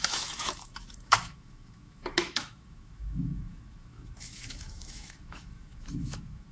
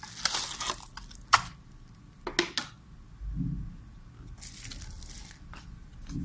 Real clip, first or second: second